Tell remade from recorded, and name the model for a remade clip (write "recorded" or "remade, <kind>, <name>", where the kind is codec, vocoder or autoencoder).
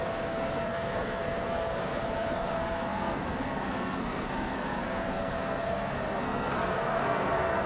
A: remade, codec, SNAC